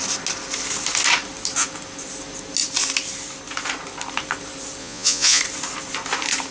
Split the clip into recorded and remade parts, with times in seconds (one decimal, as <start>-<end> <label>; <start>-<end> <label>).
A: 0.0-4.8 recorded; 4.8-5.4 remade; 5.4-6.5 recorded

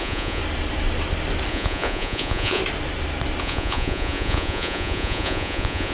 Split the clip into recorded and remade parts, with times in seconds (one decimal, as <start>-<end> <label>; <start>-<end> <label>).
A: 0.0-0.4 remade; 0.4-1.5 recorded; 1.5-2.6 remade; 2.6-3.4 recorded; 3.4-5.9 remade